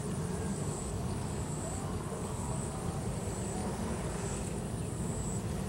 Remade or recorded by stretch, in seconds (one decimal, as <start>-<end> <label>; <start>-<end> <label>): 0.0-0.5 recorded; 0.5-2.7 remade; 2.7-3.6 recorded; 3.6-4.8 remade; 4.8-5.7 recorded